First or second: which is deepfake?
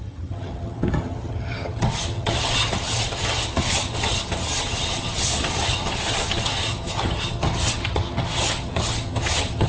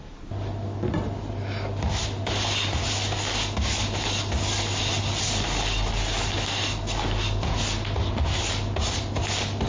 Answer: first